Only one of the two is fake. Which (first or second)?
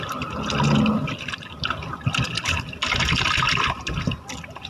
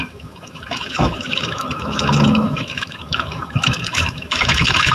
second